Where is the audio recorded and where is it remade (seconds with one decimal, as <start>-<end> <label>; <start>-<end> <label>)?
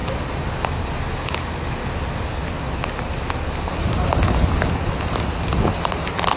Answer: 0.0-6.4 recorded